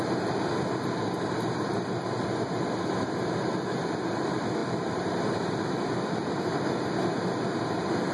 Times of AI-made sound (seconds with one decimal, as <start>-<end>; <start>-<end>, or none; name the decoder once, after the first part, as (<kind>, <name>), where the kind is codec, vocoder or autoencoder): none